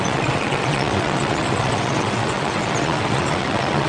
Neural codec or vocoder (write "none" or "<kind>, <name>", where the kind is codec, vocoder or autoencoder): vocoder, WaveNeXt